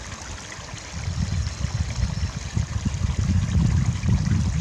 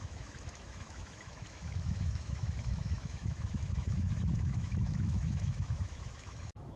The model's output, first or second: second